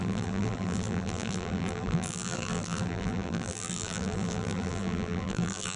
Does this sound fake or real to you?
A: fake